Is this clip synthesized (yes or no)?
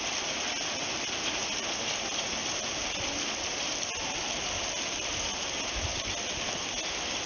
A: no